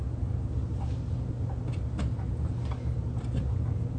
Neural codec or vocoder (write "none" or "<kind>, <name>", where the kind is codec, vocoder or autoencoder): none